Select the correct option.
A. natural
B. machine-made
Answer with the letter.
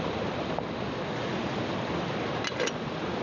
A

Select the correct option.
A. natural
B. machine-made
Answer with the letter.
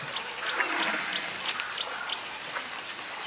A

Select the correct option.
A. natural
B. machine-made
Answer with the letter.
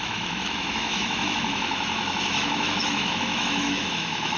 B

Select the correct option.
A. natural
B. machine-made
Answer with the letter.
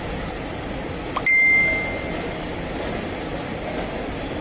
A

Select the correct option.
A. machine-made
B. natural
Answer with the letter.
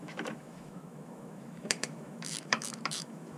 A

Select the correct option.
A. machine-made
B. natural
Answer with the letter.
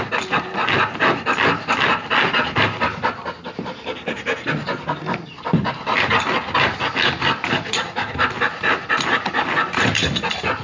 B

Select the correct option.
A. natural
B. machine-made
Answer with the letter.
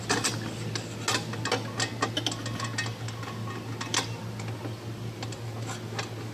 A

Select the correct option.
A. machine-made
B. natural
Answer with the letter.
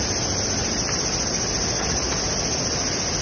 B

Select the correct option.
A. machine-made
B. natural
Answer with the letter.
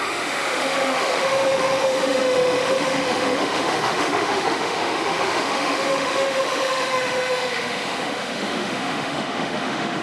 A